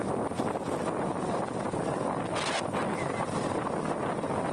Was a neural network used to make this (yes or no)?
no